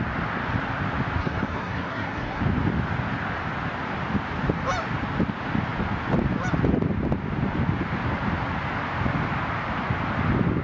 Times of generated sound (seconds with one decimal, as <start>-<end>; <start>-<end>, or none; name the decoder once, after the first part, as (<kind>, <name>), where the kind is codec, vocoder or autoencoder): 1.2-2.4 (codec, SNAC)